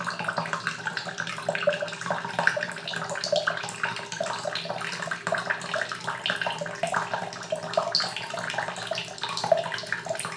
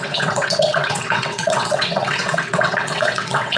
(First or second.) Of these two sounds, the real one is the first